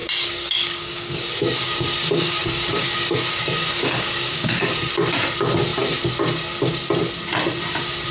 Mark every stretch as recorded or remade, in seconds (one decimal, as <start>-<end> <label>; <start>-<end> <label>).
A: 0.0-4.9 remade; 4.9-8.1 recorded